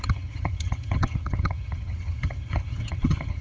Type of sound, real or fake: fake